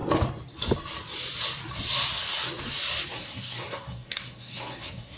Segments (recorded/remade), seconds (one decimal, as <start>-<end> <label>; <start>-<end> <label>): 0.0-3.1 recorded; 3.1-5.2 remade